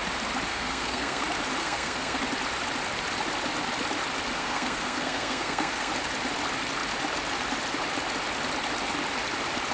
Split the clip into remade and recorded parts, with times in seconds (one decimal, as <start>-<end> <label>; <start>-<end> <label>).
0.0-0.5 recorded; 0.5-1.2 remade; 1.2-1.6 recorded; 1.6-2.2 remade; 2.2-4.4 recorded; 4.4-5.9 remade; 5.9-9.7 recorded